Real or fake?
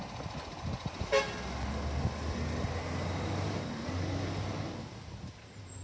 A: real